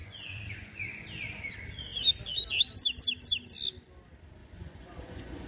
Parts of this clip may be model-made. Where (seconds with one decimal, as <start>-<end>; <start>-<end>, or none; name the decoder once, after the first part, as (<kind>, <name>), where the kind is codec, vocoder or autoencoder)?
0.0-1.0 (vocoder, Vocos); 4.4-5.5